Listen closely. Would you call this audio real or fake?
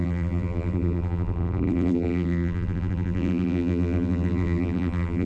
fake